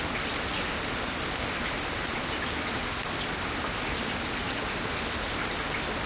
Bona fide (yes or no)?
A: yes